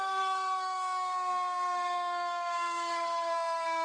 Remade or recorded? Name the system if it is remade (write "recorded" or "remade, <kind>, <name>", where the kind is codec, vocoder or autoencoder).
remade, codec, SNAC